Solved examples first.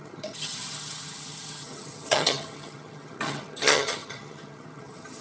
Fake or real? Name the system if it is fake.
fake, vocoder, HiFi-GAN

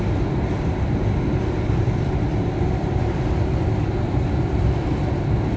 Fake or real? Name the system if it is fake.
fake, vocoder, BigVGAN v2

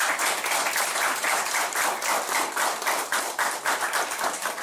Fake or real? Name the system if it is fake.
fake, vocoder, BigVGAN v2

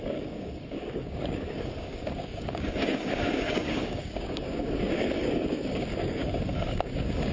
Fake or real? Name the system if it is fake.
fake, codec, DAC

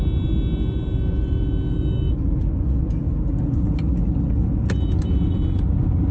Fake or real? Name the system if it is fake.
real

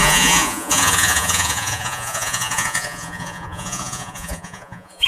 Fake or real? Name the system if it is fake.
fake, vocoder, Vocos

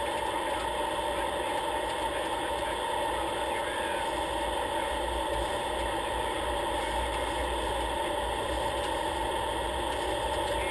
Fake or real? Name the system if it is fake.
real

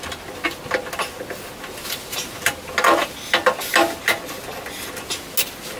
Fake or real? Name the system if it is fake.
real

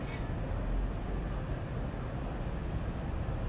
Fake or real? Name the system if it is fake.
real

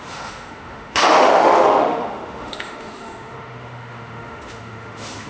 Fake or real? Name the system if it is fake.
fake, autoencoder, DAC-VAE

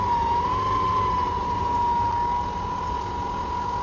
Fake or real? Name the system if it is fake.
real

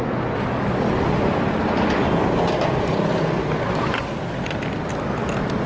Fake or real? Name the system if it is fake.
real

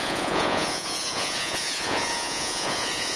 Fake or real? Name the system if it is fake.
fake, vocoder, Vocos